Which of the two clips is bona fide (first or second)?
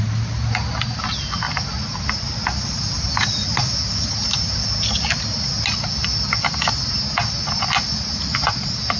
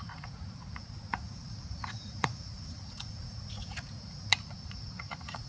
first